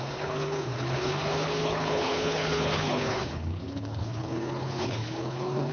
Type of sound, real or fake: fake